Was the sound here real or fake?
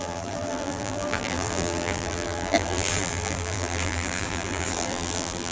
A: fake